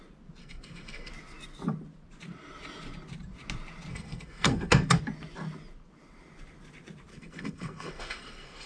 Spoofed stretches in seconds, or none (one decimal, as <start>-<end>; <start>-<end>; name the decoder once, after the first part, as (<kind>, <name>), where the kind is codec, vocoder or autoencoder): 0.4-1.1 (codec, SNAC); 3.9-5.0; 7.1-8.7